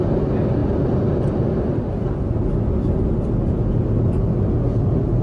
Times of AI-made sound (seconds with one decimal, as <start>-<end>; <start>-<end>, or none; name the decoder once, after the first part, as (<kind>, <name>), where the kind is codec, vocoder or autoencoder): none

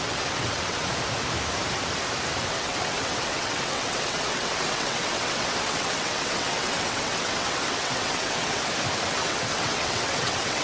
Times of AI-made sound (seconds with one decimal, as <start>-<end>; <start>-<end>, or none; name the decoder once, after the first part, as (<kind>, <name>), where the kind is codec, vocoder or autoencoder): 0.0-0.9 (vocoder, WaveNeXt); 2.4-8.6; 9.1-10.6